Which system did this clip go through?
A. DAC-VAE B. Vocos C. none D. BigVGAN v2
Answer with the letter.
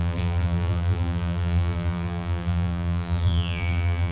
D